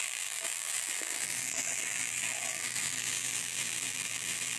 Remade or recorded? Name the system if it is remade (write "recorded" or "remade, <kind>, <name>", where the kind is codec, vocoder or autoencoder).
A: remade, vocoder, BigVGAN v2